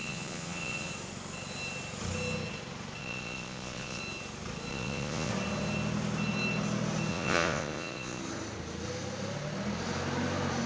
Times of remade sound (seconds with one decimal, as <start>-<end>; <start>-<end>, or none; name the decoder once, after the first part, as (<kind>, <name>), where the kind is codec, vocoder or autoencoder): 0.0-0.9 (vocoder, Vocos); 3.0-4.0; 4.7-5.3; 7.1-8.2